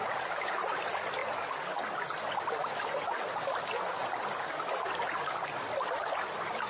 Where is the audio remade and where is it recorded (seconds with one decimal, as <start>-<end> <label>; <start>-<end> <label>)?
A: 0.0-6.7 recorded